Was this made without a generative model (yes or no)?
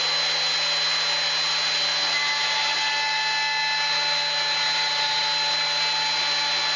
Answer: yes